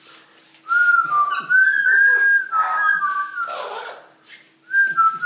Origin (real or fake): real